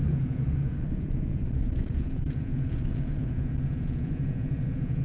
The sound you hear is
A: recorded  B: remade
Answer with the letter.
B